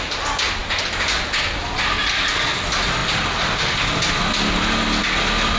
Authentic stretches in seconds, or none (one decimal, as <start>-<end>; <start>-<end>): 0.0-5.6